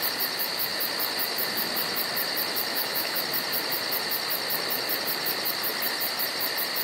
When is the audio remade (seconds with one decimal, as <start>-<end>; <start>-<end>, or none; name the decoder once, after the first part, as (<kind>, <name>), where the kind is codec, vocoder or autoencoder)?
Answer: 2.7-3.2 (autoencoder, DAC-VAE)